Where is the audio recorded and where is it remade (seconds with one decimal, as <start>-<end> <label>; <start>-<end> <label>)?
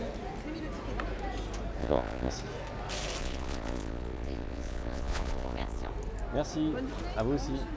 0.0-1.8 recorded; 1.8-2.3 remade; 2.3-3.2 recorded; 3.2-5.9 remade; 5.9-7.8 recorded